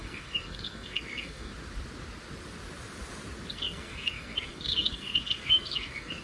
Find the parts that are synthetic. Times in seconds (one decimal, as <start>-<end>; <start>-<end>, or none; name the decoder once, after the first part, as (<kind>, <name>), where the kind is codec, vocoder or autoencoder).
0.0-1.5 (codec, SNAC); 3.5-6.2